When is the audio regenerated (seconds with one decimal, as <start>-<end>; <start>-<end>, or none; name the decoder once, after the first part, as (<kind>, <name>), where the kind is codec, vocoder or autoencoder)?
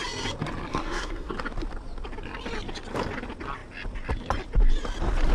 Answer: 0.7-1.3 (codec, SNAC)